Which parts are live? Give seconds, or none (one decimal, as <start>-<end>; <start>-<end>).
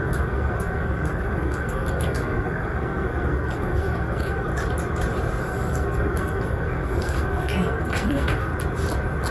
4.5-5.4; 8.5-9.3